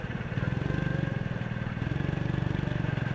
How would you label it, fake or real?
real